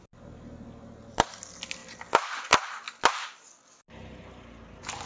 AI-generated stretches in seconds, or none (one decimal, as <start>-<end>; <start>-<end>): none